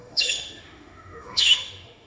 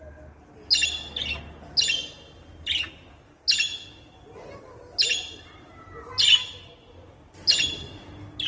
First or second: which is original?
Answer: second